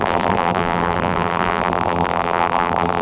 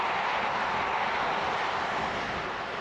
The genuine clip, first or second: second